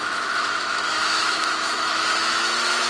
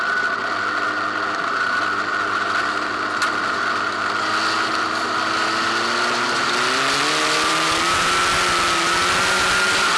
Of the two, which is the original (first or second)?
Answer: second